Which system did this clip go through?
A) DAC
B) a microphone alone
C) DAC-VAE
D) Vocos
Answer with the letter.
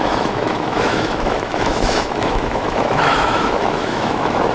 C